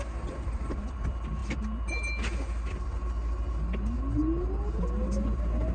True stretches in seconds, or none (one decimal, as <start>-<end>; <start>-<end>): 0.0-5.7